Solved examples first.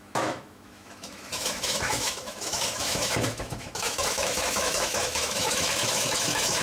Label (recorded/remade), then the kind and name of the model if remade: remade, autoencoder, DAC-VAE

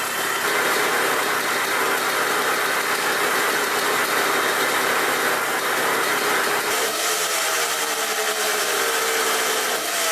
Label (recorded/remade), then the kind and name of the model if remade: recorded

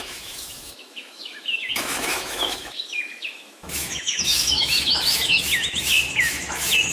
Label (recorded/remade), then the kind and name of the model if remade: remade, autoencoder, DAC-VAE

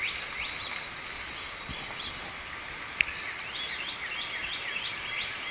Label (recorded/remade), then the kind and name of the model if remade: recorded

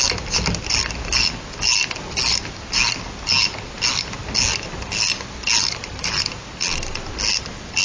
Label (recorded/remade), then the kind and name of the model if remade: recorded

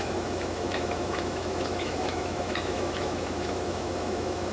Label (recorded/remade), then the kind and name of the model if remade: remade, autoencoder, DAC-VAE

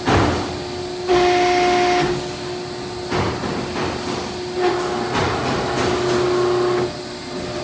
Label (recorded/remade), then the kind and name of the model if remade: recorded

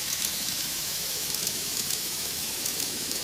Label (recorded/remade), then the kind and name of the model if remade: remade, autoencoder, DAC-VAE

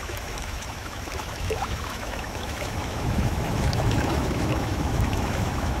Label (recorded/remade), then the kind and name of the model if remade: remade, autoencoder, DAC-VAE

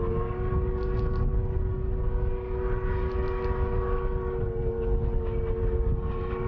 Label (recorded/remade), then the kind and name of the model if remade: recorded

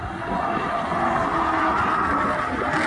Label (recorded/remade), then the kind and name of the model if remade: recorded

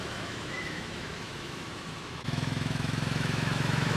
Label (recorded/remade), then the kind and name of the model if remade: remade, autoencoder, DAC-VAE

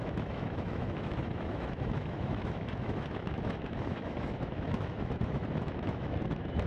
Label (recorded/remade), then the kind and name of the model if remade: remade, autoencoder, DAC-VAE